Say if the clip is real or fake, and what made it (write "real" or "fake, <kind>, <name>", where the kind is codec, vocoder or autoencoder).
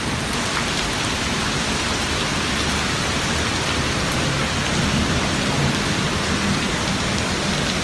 real